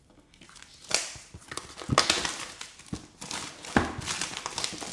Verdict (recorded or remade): recorded